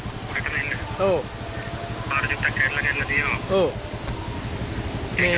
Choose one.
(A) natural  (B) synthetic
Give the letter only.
A